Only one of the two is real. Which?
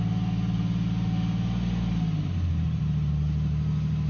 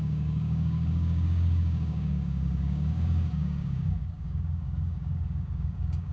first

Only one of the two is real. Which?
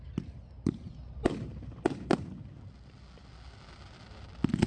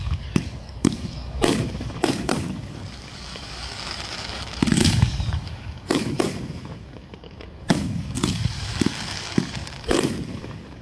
first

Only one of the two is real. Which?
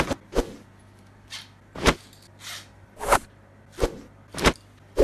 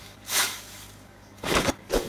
first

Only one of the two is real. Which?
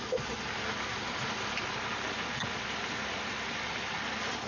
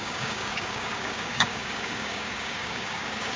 first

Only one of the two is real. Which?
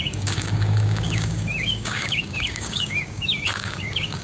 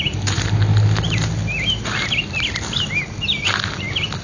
second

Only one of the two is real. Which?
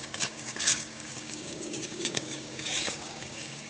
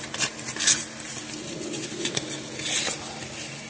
second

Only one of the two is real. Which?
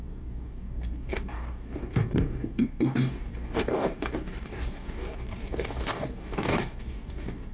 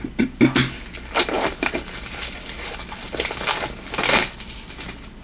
second